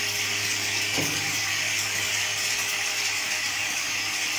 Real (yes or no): no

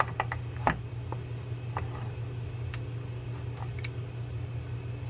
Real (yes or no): yes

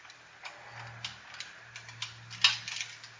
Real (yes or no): yes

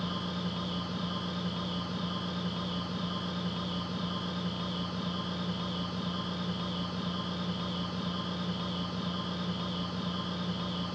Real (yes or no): yes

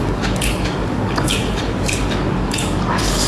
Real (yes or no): no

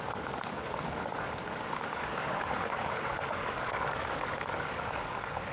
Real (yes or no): no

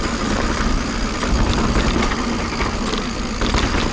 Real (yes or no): yes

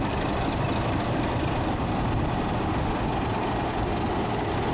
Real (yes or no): yes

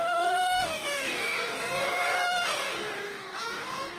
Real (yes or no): no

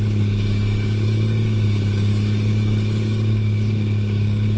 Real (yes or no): no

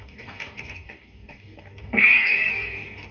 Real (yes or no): no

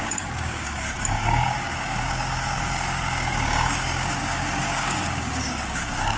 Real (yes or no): no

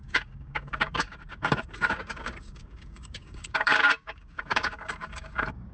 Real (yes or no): no